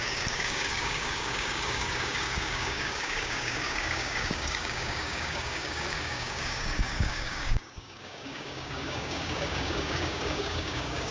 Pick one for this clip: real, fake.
fake